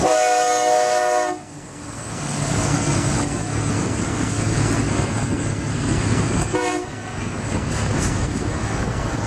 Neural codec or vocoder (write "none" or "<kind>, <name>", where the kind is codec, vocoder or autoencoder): codec, SNAC